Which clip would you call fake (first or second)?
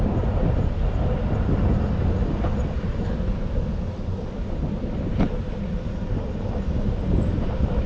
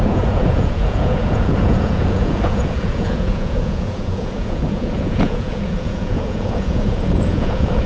second